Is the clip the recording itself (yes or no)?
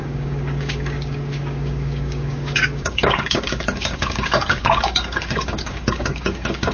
no